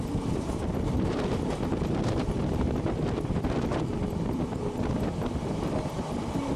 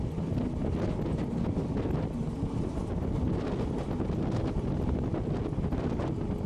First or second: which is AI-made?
first